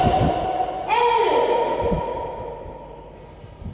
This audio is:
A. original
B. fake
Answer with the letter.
A